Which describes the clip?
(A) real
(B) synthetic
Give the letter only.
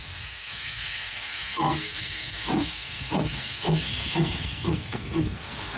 B